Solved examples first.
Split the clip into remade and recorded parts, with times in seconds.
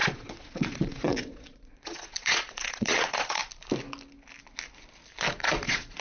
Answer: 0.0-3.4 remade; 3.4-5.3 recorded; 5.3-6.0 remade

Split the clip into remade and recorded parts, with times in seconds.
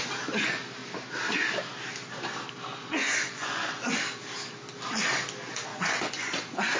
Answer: 0.0-2.7 recorded; 2.7-3.8 remade; 3.8-5.7 recorded; 5.7-6.3 remade; 6.3-6.8 recorded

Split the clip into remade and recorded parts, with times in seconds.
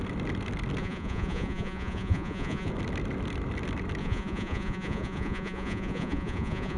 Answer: 0.0-0.8 recorded; 0.8-2.7 remade; 2.7-4.0 recorded; 4.0-6.8 remade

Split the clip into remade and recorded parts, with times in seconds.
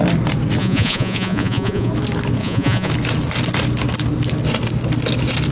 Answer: 0.0-0.6 recorded; 0.6-1.9 remade; 1.9-2.4 recorded; 2.4-2.9 remade; 2.9-5.5 recorded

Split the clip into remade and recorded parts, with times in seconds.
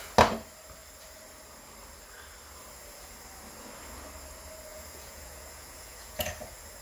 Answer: 0.0-4.7 recorded; 4.7-6.3 remade; 6.3-6.8 recorded